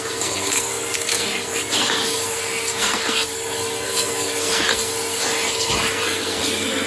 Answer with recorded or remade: remade